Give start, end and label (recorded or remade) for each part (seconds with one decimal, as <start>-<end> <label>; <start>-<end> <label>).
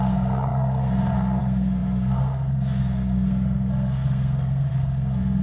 0.0-5.4 remade